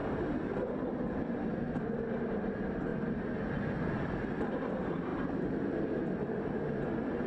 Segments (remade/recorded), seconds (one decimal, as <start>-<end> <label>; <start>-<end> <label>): 0.0-7.3 recorded